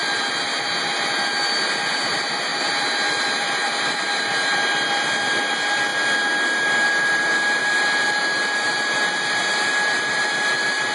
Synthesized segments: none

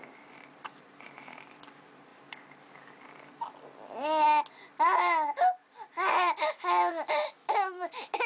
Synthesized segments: 7.4-8.3

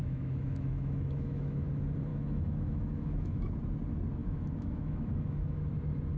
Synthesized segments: 0.0-1.7; 2.1-3.5; 4.2-5.6

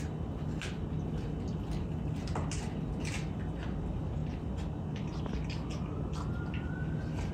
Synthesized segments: none

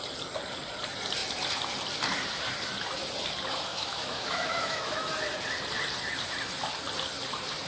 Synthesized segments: 3.7-5.1